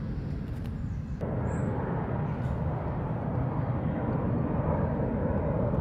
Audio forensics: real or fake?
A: real